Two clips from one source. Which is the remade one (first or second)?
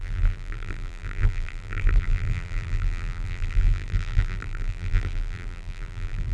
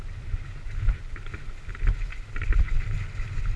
first